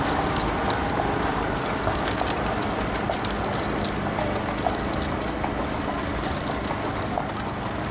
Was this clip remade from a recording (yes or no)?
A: no